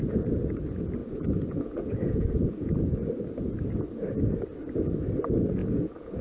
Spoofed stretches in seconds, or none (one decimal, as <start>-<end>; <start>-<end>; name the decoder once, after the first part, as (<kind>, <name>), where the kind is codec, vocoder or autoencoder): 1.0-2.7 (vocoder, Vocos); 5.6-6.2